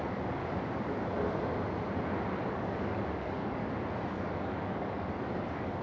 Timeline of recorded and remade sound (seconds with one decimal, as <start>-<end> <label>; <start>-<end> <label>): 0.0-0.4 remade; 0.4-2.5 recorded; 2.5-3.6 remade; 3.6-4.1 recorded; 4.1-5.8 remade